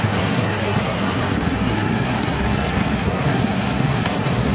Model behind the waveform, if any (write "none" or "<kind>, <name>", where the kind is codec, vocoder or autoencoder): codec, SNAC